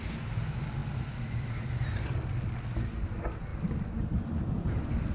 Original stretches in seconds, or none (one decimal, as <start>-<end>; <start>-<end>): 0.0-5.1